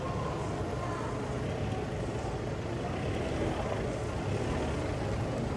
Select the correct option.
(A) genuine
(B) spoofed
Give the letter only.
A